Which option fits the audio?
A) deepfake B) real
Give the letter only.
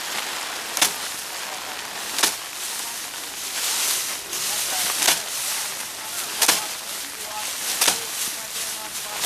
B